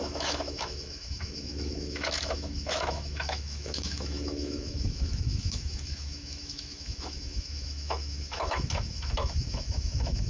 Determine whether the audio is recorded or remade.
remade